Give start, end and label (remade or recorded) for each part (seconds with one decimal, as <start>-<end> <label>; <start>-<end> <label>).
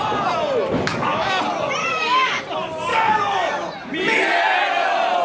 0.0-0.9 recorded; 0.9-1.4 remade; 1.4-1.8 recorded; 1.8-2.4 remade; 2.4-2.9 recorded; 2.9-3.5 remade; 3.5-5.2 recorded